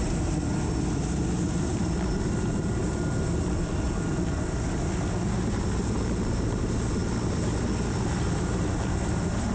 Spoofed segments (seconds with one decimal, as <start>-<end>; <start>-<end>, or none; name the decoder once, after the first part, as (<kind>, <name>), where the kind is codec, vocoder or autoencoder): none